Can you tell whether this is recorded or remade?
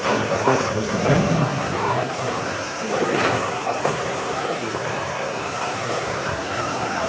remade